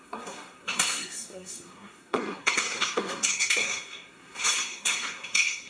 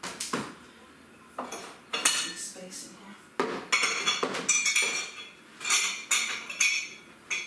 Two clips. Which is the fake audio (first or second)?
first